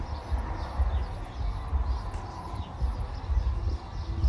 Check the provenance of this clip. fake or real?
real